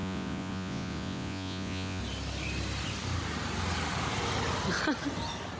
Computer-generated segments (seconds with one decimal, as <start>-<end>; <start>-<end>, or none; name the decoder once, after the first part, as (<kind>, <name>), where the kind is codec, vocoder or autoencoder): 0.0-2.0 (vocoder, Vocos)